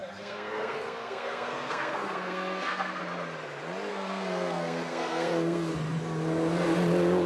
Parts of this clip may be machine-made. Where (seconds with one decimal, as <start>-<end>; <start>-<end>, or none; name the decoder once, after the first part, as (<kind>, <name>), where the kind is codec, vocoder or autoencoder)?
0.0-3.0 (codec, SNAC); 3.9-5.7